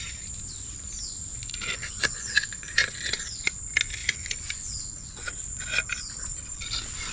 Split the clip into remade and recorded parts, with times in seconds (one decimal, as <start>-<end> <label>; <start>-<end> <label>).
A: 0.0-1.3 recorded; 1.3-3.6 remade; 3.6-4.0 recorded; 4.0-5.3 remade; 5.3-7.1 recorded